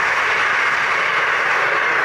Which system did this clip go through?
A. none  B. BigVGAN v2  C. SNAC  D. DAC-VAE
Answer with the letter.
A